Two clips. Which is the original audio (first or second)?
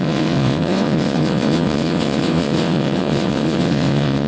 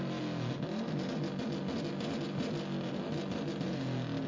second